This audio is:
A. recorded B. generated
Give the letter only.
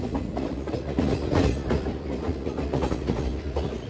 B